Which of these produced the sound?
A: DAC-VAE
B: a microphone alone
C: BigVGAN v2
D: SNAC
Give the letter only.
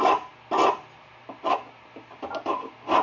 B